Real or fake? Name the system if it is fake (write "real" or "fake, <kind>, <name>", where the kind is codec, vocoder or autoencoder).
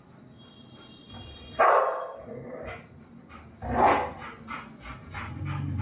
real